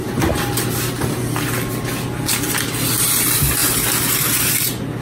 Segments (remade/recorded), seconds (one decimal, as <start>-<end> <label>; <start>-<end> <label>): 0.0-5.0 recorded